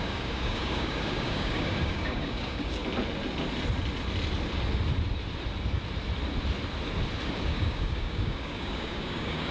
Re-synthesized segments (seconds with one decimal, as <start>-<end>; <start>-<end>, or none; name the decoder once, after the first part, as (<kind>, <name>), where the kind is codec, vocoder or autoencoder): 0.0-2.8 (codec, DAC); 7.4-9.5